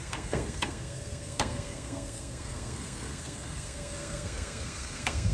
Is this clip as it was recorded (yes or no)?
no